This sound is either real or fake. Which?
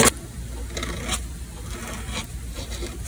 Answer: real